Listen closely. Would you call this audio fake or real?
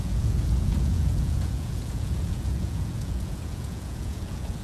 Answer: fake